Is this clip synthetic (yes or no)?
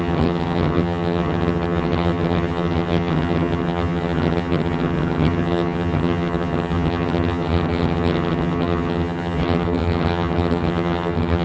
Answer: yes